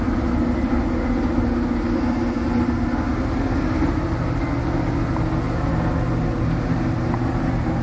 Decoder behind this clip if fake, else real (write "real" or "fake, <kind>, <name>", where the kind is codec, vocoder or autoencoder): real